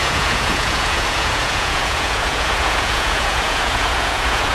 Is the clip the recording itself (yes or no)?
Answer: no